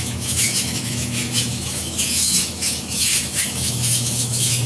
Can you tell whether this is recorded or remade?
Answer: remade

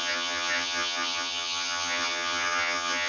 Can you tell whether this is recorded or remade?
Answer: remade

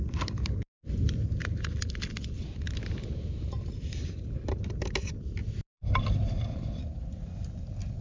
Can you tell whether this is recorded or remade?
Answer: remade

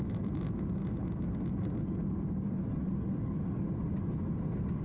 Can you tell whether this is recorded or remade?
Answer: recorded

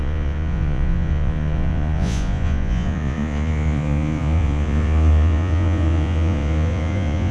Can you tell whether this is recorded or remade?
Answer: remade